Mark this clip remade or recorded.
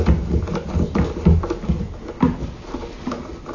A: recorded